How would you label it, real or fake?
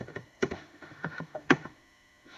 fake